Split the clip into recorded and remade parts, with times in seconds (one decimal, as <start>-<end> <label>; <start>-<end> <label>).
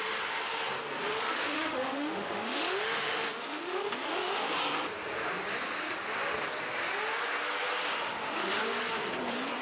0.0-1.1 recorded; 1.1-4.5 remade; 4.5-7.9 recorded; 7.9-8.6 remade; 8.6-9.6 recorded